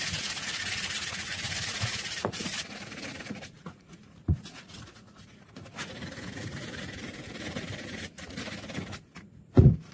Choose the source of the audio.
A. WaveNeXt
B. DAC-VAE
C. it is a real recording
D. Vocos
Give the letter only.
D